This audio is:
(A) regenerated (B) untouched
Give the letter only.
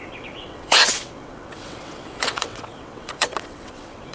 A